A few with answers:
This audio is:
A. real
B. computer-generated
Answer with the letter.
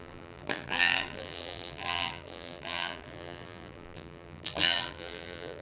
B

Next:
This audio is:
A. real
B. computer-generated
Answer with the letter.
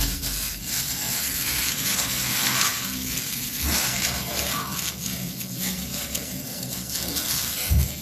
B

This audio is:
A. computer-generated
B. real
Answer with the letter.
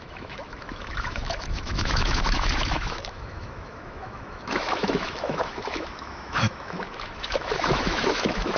A